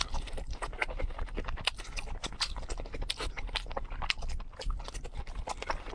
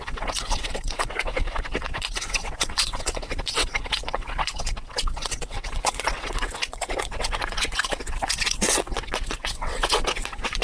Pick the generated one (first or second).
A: second